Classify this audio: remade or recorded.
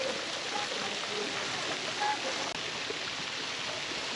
recorded